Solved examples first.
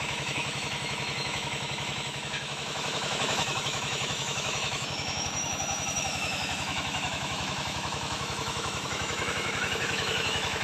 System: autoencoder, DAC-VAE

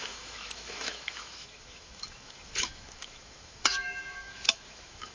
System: autoencoder, DAC-VAE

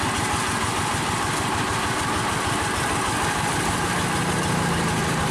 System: none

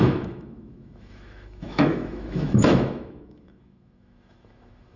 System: autoencoder, DAC-VAE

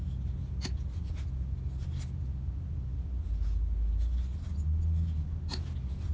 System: none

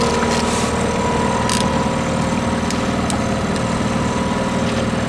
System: none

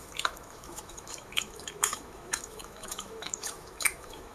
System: autoencoder, DAC-VAE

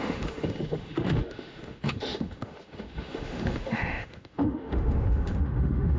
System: autoencoder, DAC-VAE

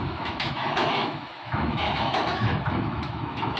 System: autoencoder, DAC-VAE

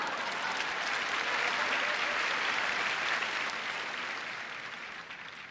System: none